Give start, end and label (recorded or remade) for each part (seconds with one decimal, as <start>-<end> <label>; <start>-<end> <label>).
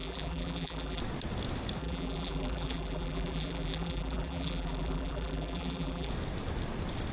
0.0-1.0 remade; 1.0-1.8 recorded; 1.8-6.1 remade; 6.1-7.1 recorded